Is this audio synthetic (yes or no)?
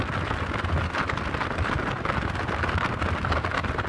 no